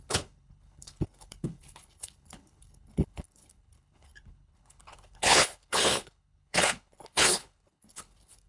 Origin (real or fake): fake